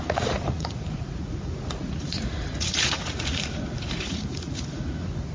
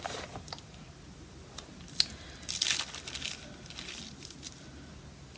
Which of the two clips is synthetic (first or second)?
first